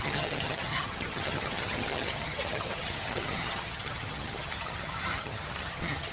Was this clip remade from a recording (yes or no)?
yes